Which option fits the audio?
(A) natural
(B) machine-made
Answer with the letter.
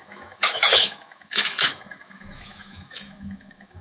B